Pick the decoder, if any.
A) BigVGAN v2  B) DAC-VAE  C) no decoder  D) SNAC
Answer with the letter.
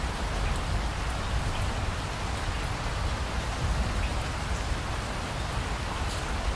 C